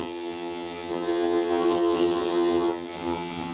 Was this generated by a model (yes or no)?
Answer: yes